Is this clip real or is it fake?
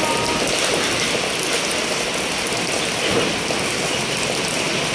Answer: real